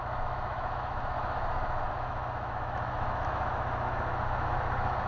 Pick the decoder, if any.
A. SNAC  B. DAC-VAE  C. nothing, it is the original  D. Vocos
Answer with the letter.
B